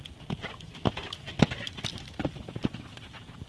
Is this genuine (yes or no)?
yes